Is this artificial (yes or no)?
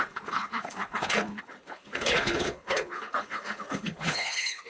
yes